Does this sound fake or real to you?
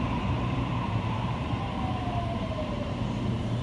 fake